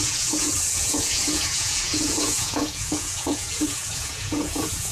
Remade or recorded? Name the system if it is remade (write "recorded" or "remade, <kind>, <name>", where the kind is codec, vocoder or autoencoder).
remade, vocoder, Vocos